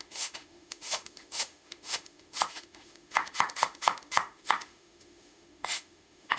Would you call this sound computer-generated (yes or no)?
yes